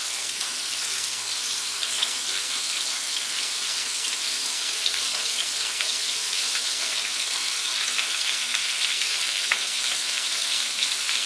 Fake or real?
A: fake